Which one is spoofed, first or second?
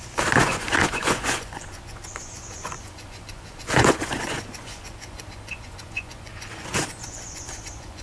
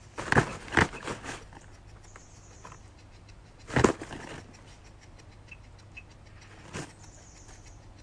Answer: first